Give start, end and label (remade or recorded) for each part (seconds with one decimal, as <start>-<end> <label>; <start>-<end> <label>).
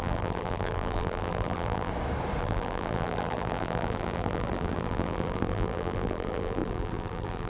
0.0-1.9 remade; 1.9-2.4 recorded; 2.4-7.5 remade